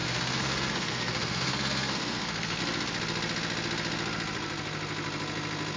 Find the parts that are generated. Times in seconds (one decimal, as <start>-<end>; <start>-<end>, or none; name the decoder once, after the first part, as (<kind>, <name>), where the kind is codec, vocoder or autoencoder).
0.0-2.6 (codec, SNAC)